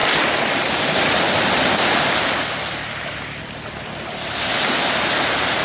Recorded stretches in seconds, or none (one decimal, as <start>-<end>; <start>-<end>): 0.0-5.6